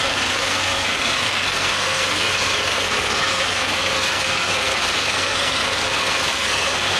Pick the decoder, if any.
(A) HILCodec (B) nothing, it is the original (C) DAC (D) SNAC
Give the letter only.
D